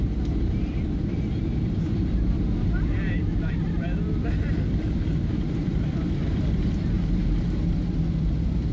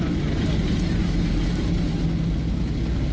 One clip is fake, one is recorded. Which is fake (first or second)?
first